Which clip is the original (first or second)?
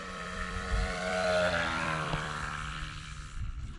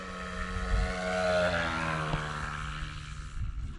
second